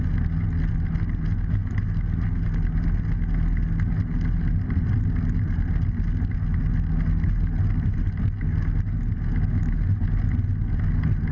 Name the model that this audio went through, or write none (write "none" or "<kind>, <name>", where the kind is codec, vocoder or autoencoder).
none